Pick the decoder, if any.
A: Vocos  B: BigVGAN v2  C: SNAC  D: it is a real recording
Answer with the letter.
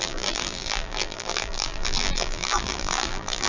B